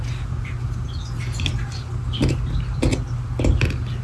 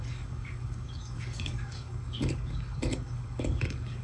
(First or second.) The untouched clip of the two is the first